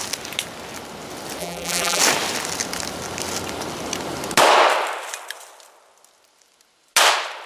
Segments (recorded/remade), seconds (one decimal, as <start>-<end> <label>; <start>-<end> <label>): 0.0-1.4 recorded; 1.4-2.0 remade; 2.0-7.5 recorded